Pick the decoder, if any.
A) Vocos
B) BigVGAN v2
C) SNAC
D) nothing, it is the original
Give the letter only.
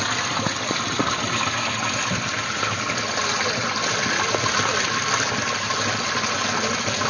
D